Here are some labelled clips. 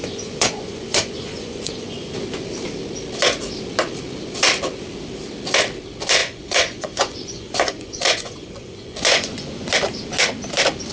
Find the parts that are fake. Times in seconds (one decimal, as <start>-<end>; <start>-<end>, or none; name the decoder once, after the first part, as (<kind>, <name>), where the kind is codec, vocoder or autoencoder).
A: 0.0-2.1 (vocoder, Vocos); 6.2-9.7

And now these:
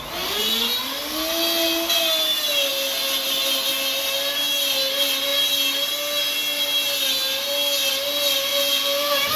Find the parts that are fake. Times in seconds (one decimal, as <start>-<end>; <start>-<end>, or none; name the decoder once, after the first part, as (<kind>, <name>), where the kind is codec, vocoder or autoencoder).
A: 8.5-9.4 (vocoder, Vocos)

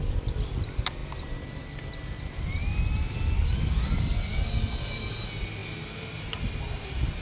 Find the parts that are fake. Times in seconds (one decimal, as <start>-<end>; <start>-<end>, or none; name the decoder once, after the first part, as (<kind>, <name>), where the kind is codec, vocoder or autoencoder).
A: none